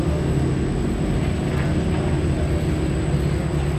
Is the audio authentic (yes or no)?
yes